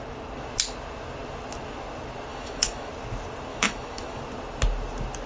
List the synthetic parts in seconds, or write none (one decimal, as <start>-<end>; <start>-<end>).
2.3-2.9; 3.5-4.2